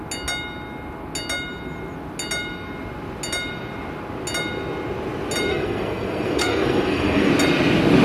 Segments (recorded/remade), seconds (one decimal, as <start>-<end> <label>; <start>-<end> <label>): 0.0-5.5 recorded; 5.5-7.3 remade; 7.3-8.0 recorded